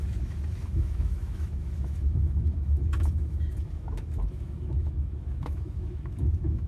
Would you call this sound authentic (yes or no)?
no